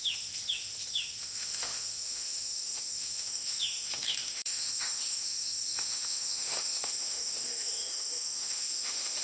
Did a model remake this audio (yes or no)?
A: yes